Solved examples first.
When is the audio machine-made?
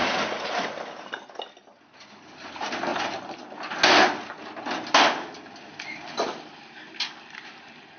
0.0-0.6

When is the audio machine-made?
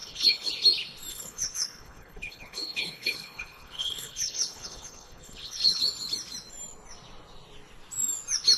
0.0-0.5; 1.1-5.8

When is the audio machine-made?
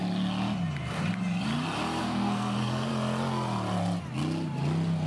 2.0-2.9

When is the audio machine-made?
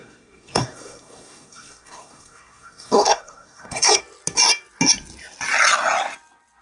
0.0-4.0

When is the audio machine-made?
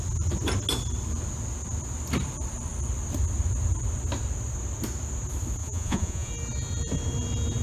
5.6-6.3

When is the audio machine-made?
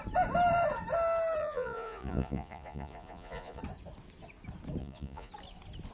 1.4-3.6; 4.8-5.3